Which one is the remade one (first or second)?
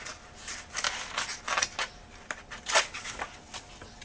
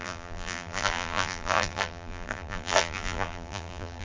second